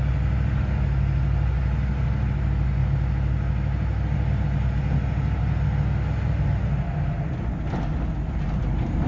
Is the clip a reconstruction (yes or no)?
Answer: no